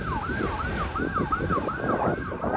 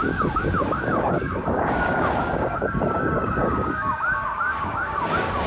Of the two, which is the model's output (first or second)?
second